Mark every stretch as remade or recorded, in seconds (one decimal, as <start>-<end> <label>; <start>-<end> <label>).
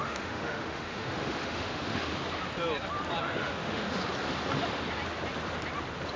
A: 0.0-2.1 remade; 2.1-3.2 recorded; 3.2-4.0 remade; 4.0-6.2 recorded